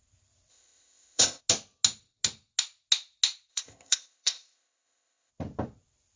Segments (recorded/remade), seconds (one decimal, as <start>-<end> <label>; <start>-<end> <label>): 0.0-0.5 recorded; 0.5-1.4 remade; 1.4-3.5 recorded; 3.5-5.3 remade; 5.3-6.2 recorded